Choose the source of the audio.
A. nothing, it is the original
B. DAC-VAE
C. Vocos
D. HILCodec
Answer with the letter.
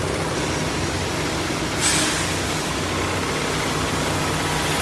A